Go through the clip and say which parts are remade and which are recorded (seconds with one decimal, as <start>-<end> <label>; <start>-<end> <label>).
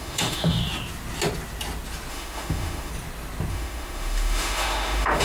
0.0-0.6 remade; 0.6-2.1 recorded; 2.1-2.9 remade; 2.9-3.5 recorded; 3.5-5.2 remade